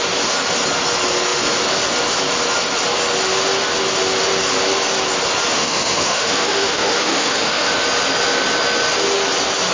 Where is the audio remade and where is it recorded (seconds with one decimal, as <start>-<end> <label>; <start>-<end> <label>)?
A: 0.0-5.5 recorded; 5.5-7.7 remade; 7.7-9.7 recorded